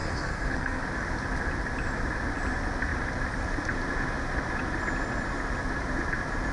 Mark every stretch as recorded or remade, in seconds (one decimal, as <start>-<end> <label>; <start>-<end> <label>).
0.0-0.8 remade; 0.8-6.5 recorded